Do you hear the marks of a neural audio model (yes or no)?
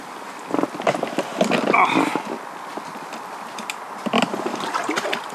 no